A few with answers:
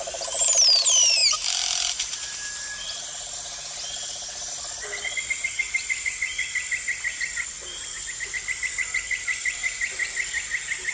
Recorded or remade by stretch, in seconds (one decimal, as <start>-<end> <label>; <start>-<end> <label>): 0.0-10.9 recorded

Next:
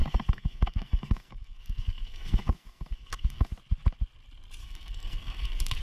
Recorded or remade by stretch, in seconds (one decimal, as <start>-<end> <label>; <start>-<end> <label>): 0.0-3.5 remade; 3.5-4.6 recorded; 4.6-5.8 remade

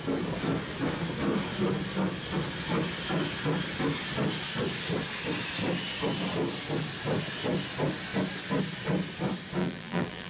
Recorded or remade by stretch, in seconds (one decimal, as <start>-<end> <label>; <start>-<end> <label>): 0.0-9.6 recorded; 9.6-10.3 remade

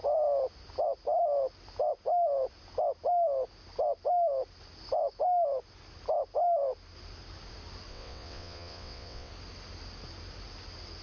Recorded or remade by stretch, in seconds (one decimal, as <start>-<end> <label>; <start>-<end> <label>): 0.0-7.9 recorded; 7.9-9.3 remade; 9.3-11.0 recorded

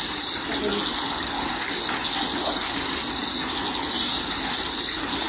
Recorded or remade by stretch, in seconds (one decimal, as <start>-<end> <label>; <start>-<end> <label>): 0.0-5.3 recorded